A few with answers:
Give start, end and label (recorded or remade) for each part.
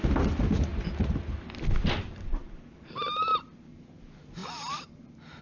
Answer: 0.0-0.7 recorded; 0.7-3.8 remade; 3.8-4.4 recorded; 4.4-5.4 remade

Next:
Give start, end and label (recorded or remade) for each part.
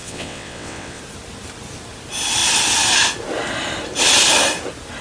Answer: 0.0-1.0 remade; 1.0-5.0 recorded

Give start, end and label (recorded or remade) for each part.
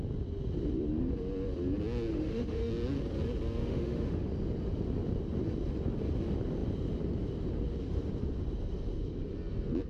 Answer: 0.0-2.1 recorded; 2.1-2.7 remade; 2.7-3.6 recorded; 3.6-4.3 remade; 4.3-9.9 recorded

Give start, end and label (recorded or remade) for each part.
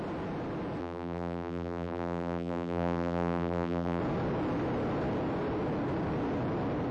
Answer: 0.0-0.8 recorded; 0.8-4.0 remade; 4.0-6.9 recorded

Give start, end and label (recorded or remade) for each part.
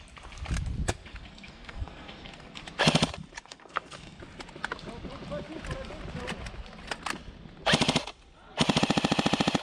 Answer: 0.0-1.1 recorded; 1.1-2.6 remade; 2.6-3.4 recorded; 3.4-4.2 remade; 4.2-9.6 recorded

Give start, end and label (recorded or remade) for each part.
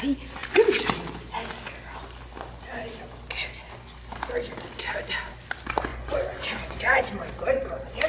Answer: 0.0-5.9 recorded; 5.9-7.0 remade; 7.0-8.1 recorded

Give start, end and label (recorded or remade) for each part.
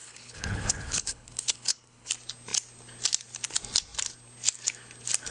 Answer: 0.0-2.1 remade; 2.1-5.3 recorded